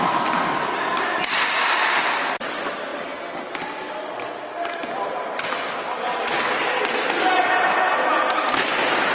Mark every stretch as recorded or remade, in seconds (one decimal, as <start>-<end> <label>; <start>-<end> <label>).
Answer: 0.0-9.1 recorded